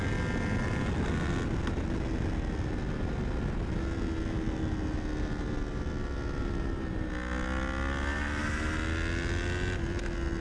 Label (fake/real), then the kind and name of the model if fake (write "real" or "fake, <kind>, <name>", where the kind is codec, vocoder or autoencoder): real